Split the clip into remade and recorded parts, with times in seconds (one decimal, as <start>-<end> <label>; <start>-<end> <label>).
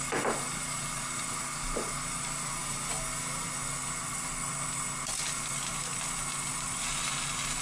0.0-7.6 recorded